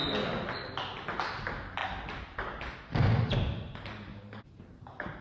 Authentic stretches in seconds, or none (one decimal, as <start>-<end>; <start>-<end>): 0.0-5.2